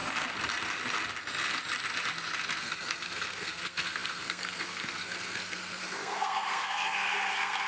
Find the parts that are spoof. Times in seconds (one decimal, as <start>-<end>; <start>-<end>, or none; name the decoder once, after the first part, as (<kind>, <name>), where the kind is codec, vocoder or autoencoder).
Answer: 2.6-7.7 (codec, SNAC)